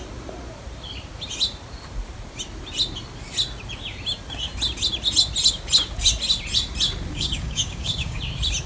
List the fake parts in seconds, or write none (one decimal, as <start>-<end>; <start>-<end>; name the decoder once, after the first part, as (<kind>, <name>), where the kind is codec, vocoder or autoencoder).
7.1-8.2 (codec, DAC)